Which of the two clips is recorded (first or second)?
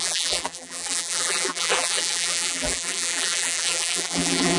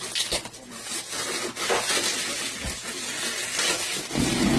second